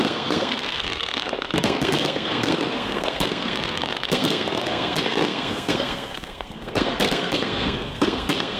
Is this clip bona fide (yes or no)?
no